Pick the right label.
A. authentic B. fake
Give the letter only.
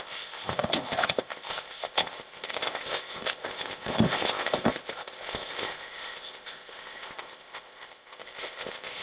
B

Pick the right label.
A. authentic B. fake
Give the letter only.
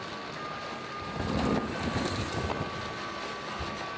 A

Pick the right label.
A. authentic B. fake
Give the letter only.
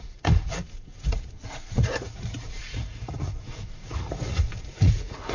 B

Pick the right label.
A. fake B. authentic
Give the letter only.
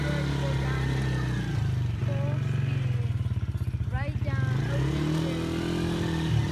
B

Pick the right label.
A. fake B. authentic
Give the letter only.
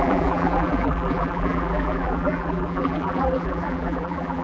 A